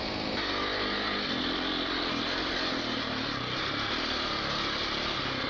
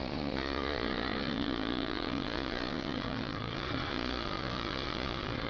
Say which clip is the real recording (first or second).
first